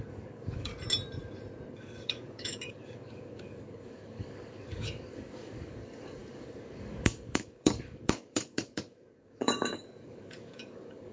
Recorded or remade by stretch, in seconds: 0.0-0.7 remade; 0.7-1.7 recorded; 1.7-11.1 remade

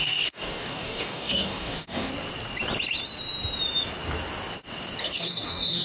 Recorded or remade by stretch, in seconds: 0.0-2.1 remade; 2.1-5.0 recorded; 5.0-5.8 remade

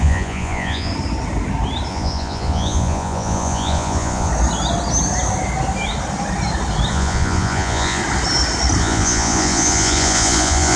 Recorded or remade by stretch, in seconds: 0.0-0.9 remade; 0.9-1.9 recorded; 1.9-4.3 remade; 4.3-6.9 recorded; 6.9-8.0 remade; 8.0-8.8 recorded; 8.8-10.8 remade

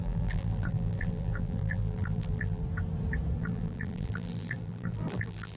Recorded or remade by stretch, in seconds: 0.0-2.6 remade; 2.6-3.4 recorded; 3.4-5.6 remade

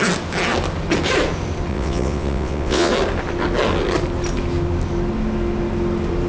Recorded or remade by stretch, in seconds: 0.0-1.7 recorded; 1.7-2.9 remade; 2.9-6.3 recorded

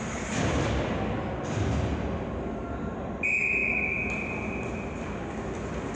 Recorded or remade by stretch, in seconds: 0.0-5.9 recorded